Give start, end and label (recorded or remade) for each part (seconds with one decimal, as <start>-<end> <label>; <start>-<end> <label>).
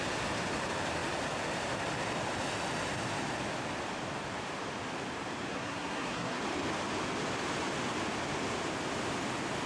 0.0-5.5 recorded; 5.5-6.4 remade; 6.4-9.7 recorded